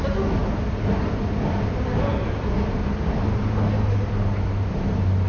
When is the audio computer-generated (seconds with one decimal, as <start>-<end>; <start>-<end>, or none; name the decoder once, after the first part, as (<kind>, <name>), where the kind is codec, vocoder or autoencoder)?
none